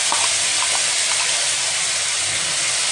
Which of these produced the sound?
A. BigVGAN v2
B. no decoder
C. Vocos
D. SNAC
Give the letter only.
B